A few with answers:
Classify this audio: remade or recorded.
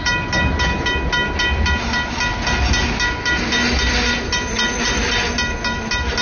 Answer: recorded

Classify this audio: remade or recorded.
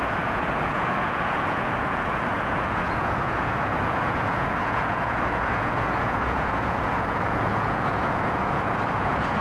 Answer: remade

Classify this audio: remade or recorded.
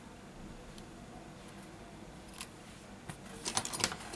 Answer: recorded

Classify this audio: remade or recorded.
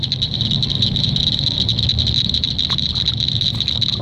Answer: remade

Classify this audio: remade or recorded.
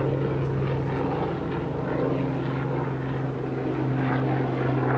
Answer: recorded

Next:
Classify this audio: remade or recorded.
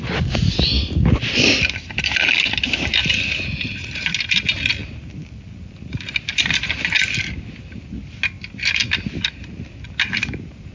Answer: recorded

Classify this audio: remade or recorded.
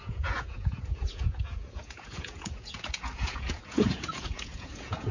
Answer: remade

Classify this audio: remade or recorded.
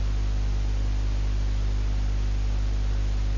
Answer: recorded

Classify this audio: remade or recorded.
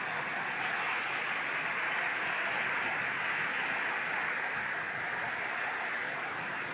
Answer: recorded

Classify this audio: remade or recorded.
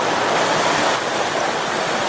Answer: recorded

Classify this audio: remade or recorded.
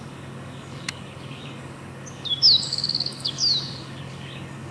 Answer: remade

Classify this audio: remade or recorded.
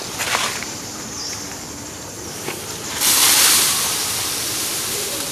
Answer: recorded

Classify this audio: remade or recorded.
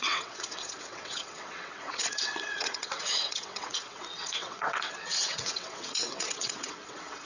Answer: remade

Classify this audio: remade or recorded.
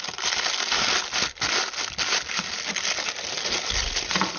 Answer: recorded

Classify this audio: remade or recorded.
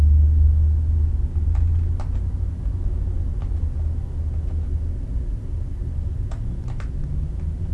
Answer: recorded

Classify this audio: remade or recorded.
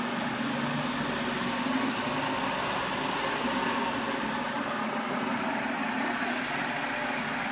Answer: recorded